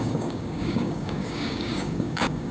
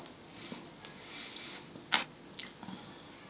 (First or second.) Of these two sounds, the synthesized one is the first